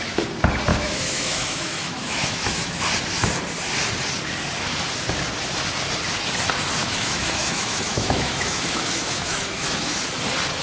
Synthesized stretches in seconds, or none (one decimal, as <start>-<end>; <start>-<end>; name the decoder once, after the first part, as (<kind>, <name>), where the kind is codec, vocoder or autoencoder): 0.7-2.8 (autoencoder, DAC-VAE); 6.8-10.0